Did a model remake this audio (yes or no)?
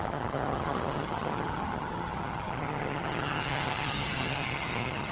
yes